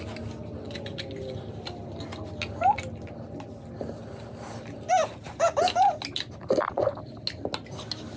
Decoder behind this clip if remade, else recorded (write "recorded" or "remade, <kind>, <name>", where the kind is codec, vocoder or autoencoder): recorded